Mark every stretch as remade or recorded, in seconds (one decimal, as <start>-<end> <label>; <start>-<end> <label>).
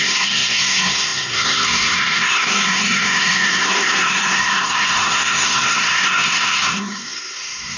0.0-7.8 remade